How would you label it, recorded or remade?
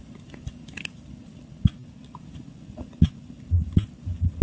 recorded